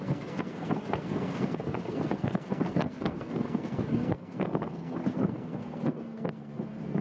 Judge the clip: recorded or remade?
remade